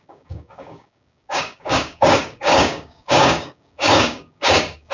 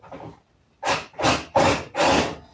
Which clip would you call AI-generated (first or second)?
first